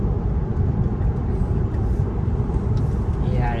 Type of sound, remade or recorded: remade